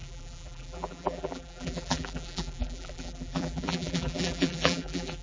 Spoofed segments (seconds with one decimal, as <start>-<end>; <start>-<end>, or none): 0.0-5.2